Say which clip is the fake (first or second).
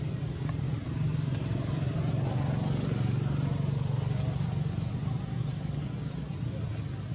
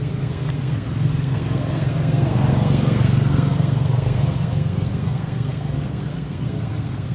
second